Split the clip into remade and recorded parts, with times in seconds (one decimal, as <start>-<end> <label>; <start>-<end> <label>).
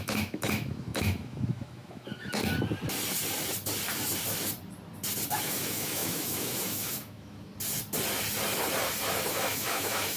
0.0-2.4 remade; 2.4-5.4 recorded; 5.4-7.5 remade; 7.5-9.3 recorded; 9.3-10.2 remade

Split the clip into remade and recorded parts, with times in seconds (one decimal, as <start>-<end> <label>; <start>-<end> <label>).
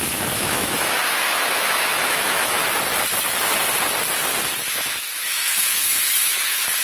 0.0-2.6 remade; 2.6-4.7 recorded; 4.7-6.8 remade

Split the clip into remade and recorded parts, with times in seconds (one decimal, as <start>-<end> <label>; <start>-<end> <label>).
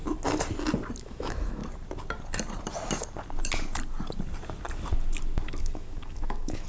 0.0-1.0 recorded; 1.0-1.6 remade; 1.6-5.6 recorded; 5.6-6.7 remade